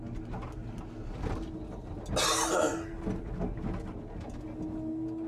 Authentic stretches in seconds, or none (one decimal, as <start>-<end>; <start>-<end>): 0.0-5.3